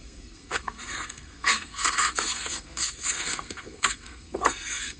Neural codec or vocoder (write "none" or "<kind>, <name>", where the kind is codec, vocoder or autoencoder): codec, SNAC